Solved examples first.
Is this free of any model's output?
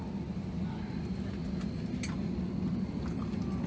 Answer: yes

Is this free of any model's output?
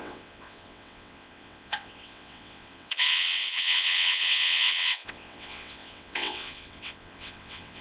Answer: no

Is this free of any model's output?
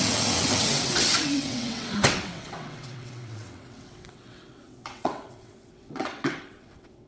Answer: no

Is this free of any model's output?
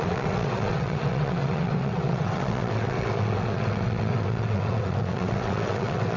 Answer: no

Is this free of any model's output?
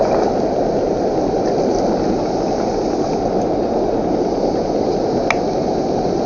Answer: yes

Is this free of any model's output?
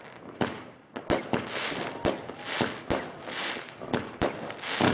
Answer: yes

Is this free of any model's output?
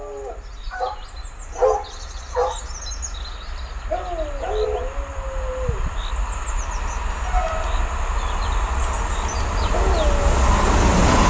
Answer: yes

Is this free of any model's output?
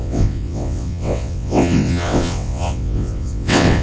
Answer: no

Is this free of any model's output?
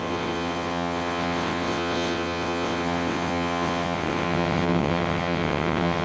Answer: no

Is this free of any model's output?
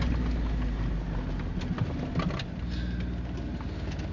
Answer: yes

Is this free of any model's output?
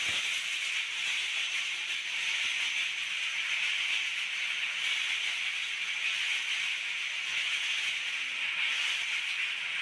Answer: yes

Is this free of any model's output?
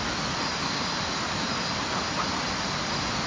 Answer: yes